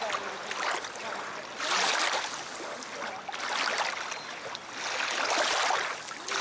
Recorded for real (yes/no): yes